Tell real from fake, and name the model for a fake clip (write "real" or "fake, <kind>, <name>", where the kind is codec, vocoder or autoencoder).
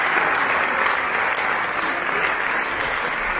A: real